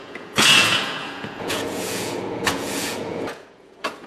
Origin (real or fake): fake